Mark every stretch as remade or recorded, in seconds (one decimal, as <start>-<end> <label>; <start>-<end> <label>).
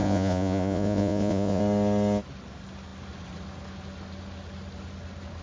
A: 0.0-1.6 remade; 1.6-5.4 recorded